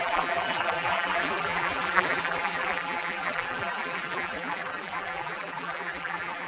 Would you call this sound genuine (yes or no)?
no